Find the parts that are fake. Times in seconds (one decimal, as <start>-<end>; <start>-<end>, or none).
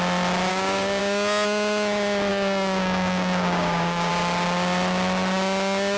0.5-1.0; 2.3-4.1